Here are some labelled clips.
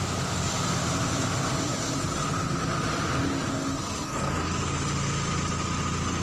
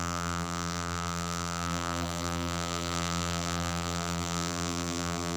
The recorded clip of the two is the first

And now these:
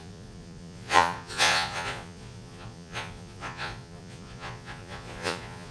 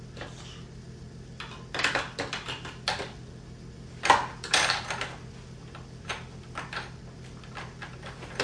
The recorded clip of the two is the second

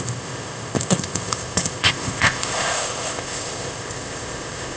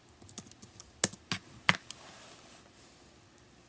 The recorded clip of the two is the second